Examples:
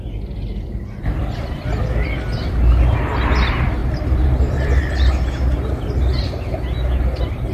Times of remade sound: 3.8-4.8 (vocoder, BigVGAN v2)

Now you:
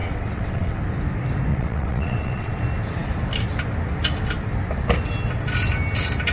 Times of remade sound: 0.0-0.8 (vocoder, WaveNeXt); 1.5-2.6

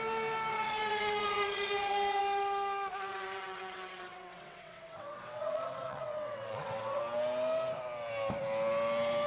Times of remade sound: 0.5-2.2 (vocoder, WaveNeXt); 3.1-7.0

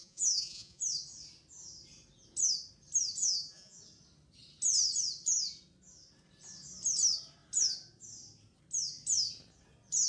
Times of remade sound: 0.0-0.8 (vocoder, Vocos); 3.2-3.8

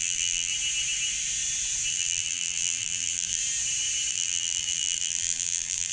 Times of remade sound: 0.0-0.5 (vocoder, BigVGAN v2); 1.9-3.4; 4.1-5.9

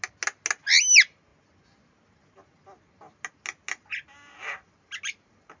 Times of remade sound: none